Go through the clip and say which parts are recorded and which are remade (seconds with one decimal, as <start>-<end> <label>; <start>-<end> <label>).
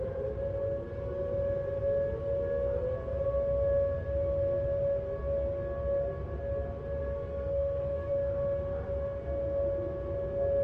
0.0-7.0 recorded; 7.0-8.1 remade; 8.1-10.6 recorded